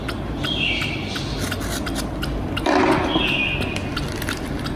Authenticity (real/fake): real